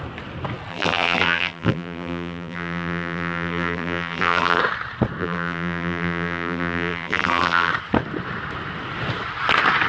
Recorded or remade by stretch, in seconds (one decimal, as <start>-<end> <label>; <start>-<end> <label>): 0.0-0.7 recorded; 0.7-4.6 remade; 4.6-5.2 recorded; 5.2-7.7 remade; 7.7-9.9 recorded